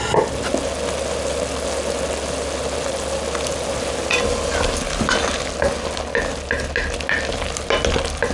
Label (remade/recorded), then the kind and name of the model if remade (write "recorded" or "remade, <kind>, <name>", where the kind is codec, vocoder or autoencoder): recorded